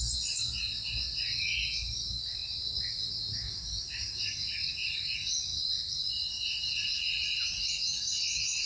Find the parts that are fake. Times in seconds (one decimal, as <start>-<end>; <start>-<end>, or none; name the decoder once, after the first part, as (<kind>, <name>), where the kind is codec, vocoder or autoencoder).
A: none